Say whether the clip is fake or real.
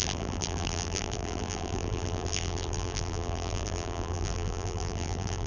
fake